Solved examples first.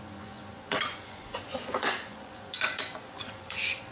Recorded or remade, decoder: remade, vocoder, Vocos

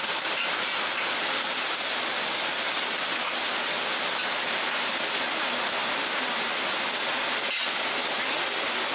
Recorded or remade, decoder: recorded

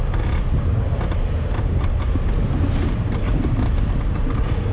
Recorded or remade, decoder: recorded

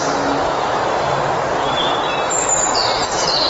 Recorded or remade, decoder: recorded